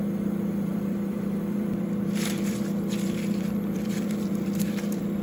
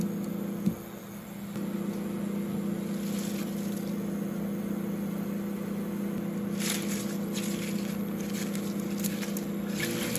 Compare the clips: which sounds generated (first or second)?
first